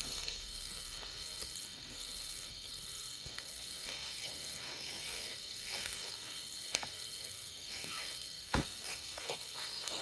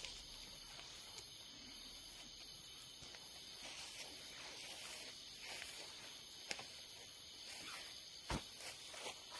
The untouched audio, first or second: second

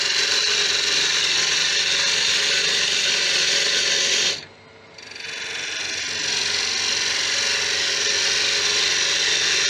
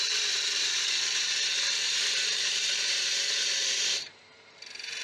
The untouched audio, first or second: first